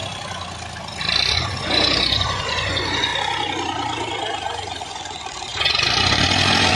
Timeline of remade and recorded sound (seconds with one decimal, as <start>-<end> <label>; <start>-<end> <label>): 0.0-1.3 recorded; 1.3-3.1 remade; 3.1-4.8 recorded; 4.8-6.7 remade